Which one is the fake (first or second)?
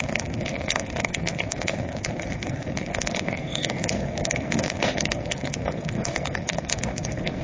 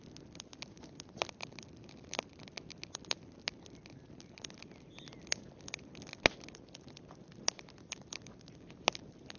first